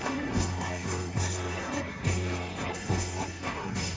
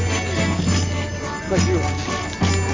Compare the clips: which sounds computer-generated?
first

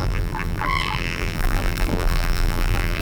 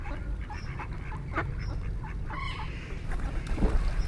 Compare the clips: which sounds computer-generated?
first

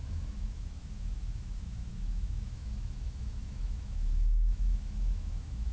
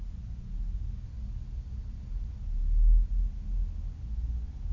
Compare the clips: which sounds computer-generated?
first